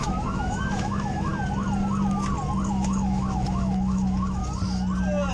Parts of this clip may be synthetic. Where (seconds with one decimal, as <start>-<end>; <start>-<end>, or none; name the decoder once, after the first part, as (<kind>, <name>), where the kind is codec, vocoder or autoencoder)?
0.0-1.3 (autoencoder, DAC-VAE); 2.7-4.4